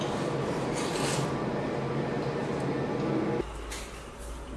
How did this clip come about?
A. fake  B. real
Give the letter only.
B